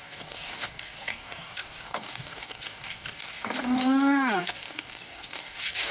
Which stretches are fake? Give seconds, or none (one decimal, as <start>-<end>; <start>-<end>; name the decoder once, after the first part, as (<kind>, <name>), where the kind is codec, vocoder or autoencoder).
0.0-5.9 (codec, DAC)